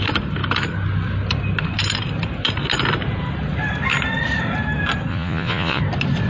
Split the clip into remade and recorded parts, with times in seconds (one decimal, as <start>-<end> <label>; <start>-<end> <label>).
0.0-5.1 recorded; 5.1-5.8 remade; 5.8-6.3 recorded